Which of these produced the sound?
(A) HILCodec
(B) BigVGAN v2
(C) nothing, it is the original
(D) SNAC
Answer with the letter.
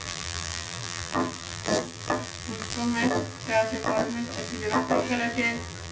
B